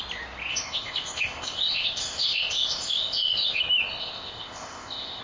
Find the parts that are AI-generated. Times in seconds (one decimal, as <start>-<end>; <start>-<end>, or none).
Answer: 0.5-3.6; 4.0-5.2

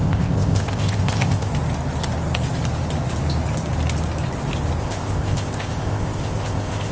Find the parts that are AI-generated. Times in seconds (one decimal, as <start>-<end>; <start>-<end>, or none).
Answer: 0.0-1.5; 4.8-6.9

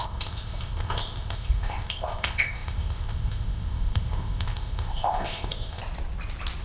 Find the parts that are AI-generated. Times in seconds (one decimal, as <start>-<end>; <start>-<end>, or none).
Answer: 0.0-5.8

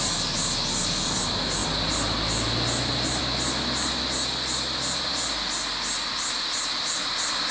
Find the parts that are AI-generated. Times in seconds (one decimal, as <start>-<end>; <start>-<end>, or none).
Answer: none

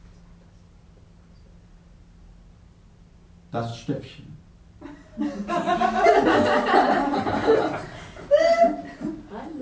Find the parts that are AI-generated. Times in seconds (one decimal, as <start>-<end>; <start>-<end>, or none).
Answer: none

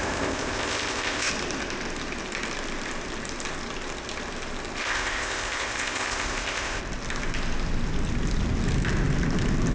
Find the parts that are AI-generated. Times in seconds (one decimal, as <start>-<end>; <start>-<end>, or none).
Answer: 0.0-1.3; 4.8-6.8